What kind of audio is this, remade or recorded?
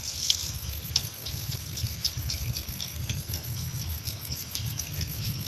remade